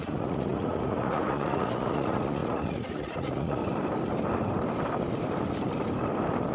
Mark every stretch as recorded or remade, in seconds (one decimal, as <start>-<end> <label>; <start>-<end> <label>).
0.0-3.6 remade; 3.6-6.5 recorded